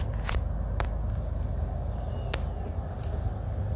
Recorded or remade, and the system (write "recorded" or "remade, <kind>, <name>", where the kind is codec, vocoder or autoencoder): recorded